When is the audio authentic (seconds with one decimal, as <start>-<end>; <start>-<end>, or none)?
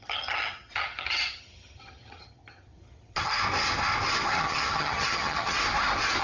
3.4-4.4; 5.6-6.2